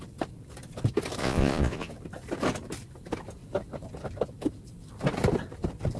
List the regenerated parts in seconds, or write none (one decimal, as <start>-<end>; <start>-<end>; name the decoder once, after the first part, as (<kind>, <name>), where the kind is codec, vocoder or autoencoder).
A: 1.2-1.9 (vocoder, Vocos)